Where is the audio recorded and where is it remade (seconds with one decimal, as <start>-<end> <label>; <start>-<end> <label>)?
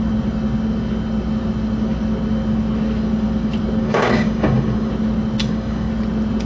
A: 0.0-3.8 recorded; 3.8-4.9 remade; 4.9-5.4 recorded; 5.4-5.9 remade; 5.9-6.5 recorded